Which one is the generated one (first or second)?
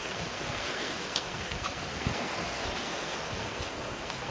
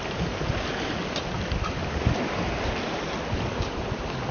first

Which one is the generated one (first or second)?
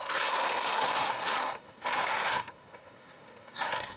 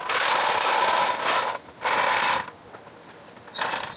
first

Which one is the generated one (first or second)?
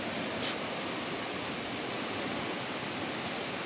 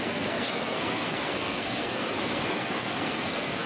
second